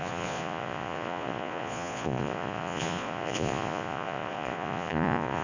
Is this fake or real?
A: fake